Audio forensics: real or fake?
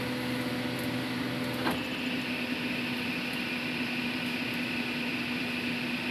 real